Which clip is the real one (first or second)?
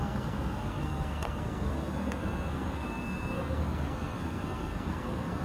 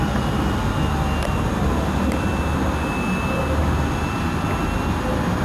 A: second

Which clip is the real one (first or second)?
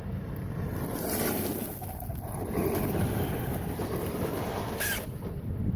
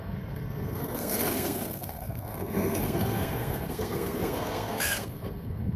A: first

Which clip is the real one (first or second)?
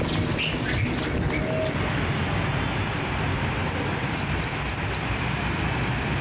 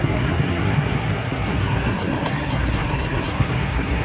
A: first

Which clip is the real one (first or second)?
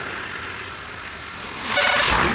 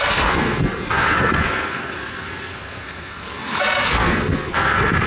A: first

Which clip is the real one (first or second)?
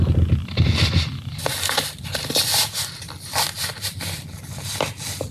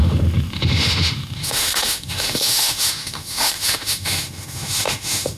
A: first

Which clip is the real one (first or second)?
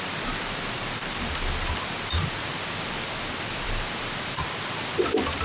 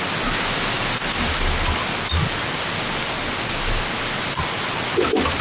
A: second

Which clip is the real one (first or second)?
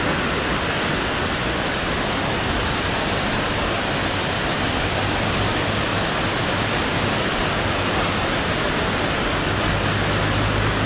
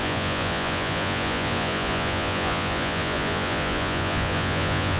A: first